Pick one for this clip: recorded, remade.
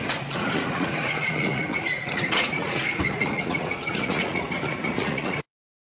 remade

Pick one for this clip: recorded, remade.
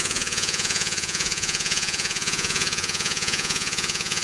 remade